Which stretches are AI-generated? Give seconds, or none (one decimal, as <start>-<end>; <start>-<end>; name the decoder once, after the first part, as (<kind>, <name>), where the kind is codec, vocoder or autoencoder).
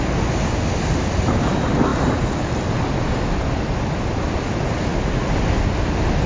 none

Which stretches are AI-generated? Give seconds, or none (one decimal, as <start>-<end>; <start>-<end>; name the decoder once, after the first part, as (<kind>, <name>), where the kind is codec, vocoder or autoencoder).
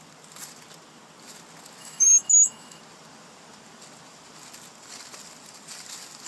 1.8-2.8 (autoencoder, DAC-VAE)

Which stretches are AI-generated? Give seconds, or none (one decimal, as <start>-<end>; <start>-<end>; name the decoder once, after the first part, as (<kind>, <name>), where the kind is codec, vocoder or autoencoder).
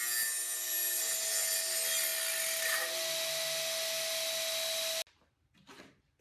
none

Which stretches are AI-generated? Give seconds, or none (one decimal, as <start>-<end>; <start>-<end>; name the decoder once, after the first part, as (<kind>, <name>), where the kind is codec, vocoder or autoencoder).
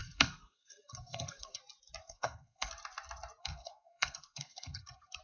0.0-1.6 (codec, SNAC); 2.0-2.7; 3.4-5.2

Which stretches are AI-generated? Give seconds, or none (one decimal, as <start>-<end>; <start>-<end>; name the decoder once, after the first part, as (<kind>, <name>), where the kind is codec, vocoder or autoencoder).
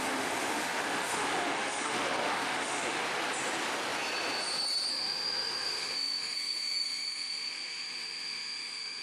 0.0-3.0 (autoencoder, DAC-VAE); 4.9-9.0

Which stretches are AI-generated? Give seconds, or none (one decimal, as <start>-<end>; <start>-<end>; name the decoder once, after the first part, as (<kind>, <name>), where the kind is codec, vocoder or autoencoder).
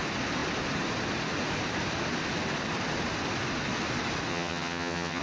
4.3-5.2 (vocoder, HiFi-GAN)